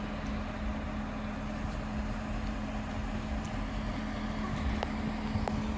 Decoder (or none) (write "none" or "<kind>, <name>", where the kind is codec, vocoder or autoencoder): none